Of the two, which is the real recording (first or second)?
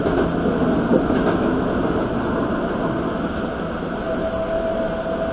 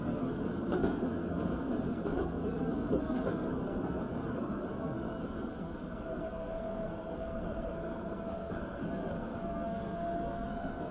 first